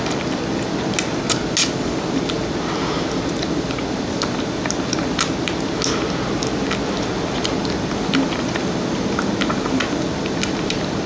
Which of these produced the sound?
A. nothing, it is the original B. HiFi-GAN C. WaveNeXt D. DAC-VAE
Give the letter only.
A